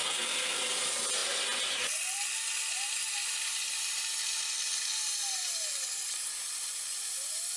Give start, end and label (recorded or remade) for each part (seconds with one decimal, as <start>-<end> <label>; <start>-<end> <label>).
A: 0.0-0.6 remade; 0.6-7.6 recorded